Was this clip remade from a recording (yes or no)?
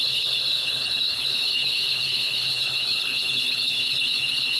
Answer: yes